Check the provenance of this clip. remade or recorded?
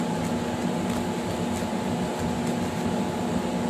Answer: recorded